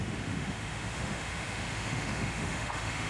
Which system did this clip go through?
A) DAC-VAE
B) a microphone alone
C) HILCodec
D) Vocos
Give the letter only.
A